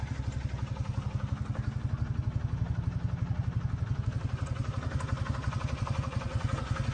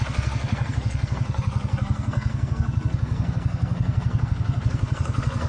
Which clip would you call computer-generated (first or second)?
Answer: second